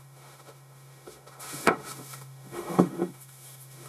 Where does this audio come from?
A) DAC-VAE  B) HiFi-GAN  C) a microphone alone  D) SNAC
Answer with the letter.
A